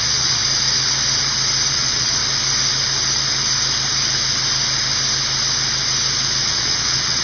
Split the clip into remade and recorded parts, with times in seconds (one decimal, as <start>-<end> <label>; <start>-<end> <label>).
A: 0.0-0.4 remade; 0.4-1.7 recorded; 1.7-2.2 remade; 2.2-6.5 recorded; 6.5-7.2 remade